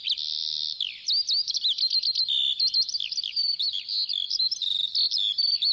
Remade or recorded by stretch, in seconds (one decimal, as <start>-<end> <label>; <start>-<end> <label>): 0.0-5.7 recorded